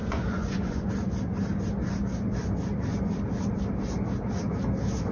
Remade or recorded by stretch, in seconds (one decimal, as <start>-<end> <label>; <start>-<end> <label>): 0.0-0.9 remade; 0.9-5.1 recorded